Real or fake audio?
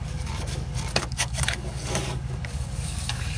fake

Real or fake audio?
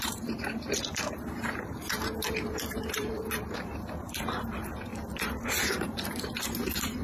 fake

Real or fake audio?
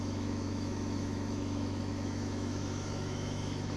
fake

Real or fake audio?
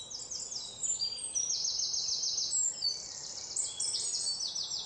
real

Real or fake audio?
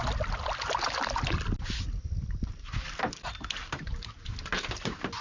real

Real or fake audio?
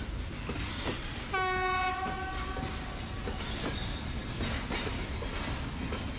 real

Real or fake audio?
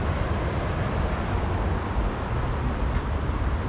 real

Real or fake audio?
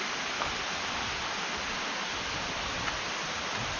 real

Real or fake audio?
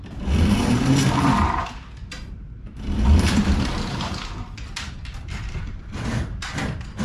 fake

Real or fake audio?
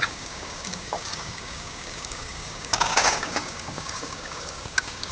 fake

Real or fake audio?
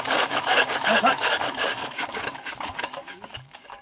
fake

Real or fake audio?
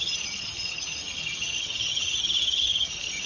fake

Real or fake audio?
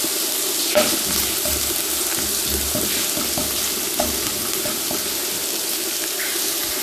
real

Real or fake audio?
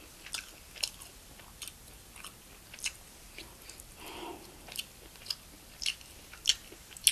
real